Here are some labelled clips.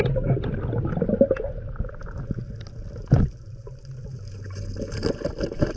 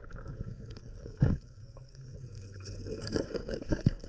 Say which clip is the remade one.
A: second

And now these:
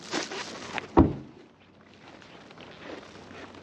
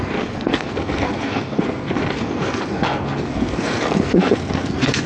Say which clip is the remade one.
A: second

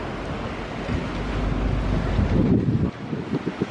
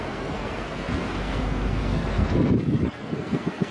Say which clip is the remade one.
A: second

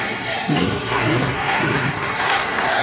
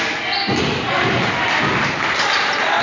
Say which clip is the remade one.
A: first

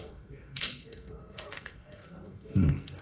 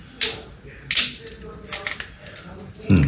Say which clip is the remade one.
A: first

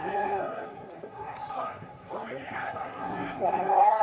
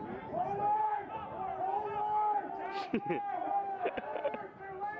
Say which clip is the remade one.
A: first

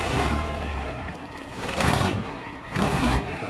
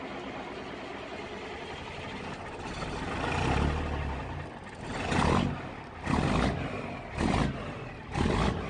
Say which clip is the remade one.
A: first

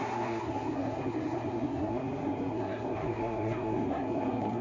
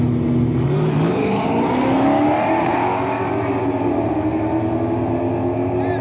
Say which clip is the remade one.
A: first